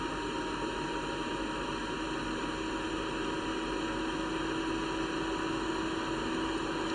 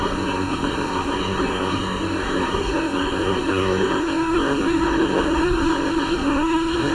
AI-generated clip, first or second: second